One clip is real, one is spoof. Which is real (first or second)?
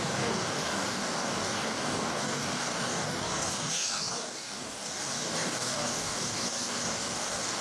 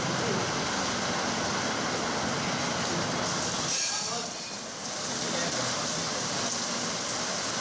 second